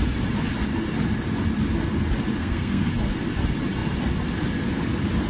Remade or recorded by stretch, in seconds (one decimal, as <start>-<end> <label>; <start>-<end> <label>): 0.0-2.4 recorded; 2.4-2.9 remade; 2.9-5.3 recorded